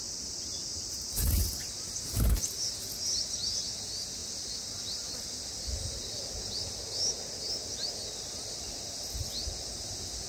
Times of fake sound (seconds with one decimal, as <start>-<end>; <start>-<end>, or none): 4.2-6.4